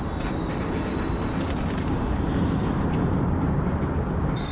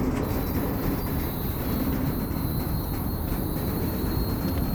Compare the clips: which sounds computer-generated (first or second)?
second